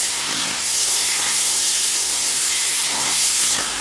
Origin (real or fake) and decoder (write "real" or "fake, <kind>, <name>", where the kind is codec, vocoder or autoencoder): fake, codec, SNAC